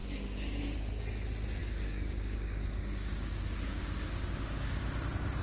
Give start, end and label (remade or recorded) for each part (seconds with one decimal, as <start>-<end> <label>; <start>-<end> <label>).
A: 0.0-0.8 remade; 0.8-1.6 recorded; 1.6-4.8 remade; 4.8-5.4 recorded